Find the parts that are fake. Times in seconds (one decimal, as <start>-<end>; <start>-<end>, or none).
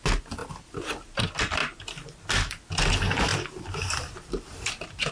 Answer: 0.4-1.2; 3.3-5.1